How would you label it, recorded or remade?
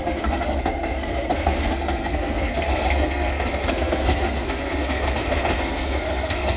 remade